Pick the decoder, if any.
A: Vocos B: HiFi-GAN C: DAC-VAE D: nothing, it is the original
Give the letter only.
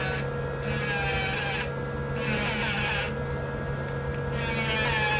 D